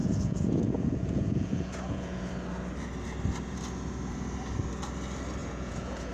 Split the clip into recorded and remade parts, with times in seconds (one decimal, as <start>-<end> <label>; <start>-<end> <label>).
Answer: 0.0-2.3 remade; 2.3-5.4 recorded; 5.4-6.1 remade